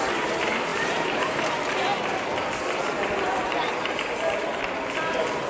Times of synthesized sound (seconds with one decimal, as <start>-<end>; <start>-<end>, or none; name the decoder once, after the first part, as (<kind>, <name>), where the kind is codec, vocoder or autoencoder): 0.7-1.5 (vocoder, BigVGAN v2)